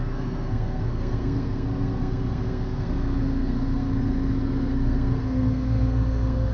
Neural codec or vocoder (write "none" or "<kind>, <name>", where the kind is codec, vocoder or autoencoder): codec, SNAC